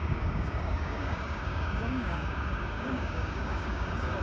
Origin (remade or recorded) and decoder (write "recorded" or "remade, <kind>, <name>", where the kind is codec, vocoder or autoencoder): remade, codec, DAC